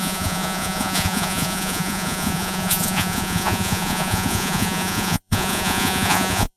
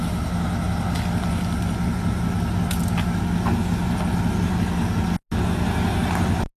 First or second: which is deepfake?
first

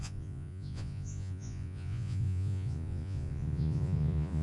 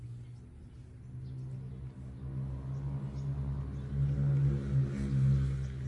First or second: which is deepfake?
first